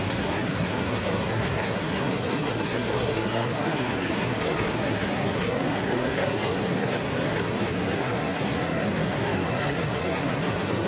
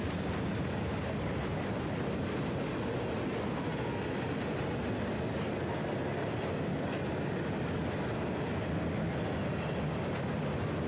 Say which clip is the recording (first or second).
second